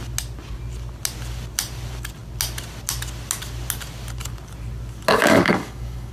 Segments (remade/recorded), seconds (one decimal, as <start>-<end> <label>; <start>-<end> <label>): 0.0-5.1 recorded; 5.1-6.1 remade